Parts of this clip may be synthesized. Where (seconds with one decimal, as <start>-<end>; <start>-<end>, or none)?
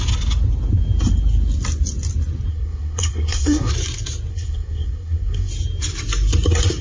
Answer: 2.5-3.7; 4.3-5.5